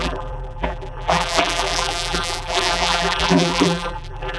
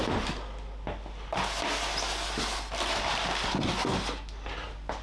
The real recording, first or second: second